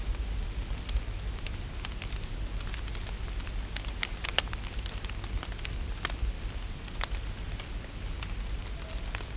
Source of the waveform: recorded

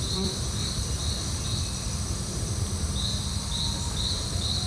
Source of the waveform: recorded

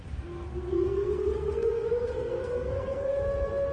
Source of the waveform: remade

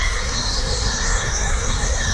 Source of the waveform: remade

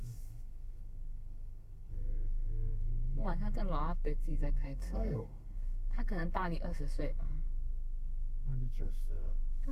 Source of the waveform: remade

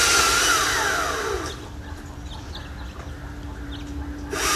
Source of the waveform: recorded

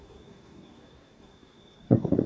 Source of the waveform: remade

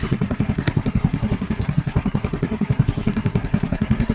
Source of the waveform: remade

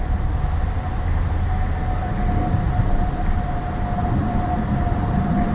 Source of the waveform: recorded